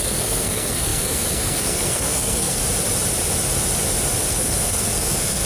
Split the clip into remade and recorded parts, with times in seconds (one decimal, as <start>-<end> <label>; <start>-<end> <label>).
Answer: 0.0-2.6 remade; 2.6-4.3 recorded; 4.3-5.5 remade